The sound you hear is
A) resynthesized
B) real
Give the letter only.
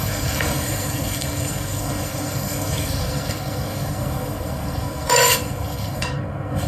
A